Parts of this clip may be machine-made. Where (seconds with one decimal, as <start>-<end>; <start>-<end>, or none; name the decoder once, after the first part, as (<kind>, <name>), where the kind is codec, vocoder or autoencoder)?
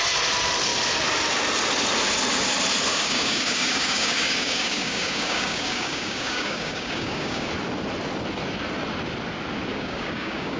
2.9-7.5 (codec, DAC); 9.7-10.6